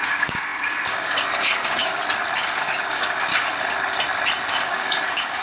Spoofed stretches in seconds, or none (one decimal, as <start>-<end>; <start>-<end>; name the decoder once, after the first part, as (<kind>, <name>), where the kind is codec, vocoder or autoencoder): 0.0-2.0 (codec, DAC); 2.6-3.3; 4.5-5.4